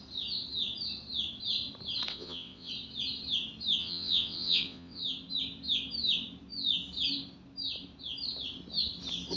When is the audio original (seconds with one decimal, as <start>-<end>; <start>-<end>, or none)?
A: 0.0-2.1; 2.7-3.8; 5.0-9.4